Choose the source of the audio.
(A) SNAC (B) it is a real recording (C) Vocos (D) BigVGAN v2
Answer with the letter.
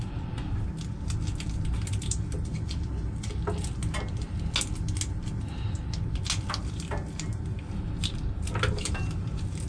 B